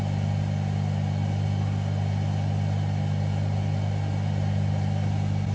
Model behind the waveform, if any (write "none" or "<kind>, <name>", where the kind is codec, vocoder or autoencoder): none